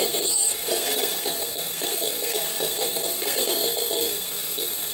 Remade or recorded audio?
remade